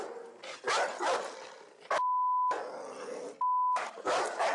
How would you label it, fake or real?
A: real